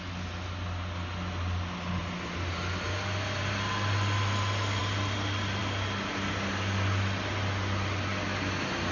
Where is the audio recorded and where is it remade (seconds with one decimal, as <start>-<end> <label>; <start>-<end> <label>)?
0.0-8.9 recorded